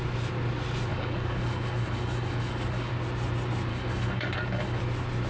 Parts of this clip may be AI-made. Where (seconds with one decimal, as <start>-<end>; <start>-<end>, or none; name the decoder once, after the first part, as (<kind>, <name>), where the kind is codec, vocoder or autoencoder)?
0.9-2.9 (codec, DAC); 3.7-4.8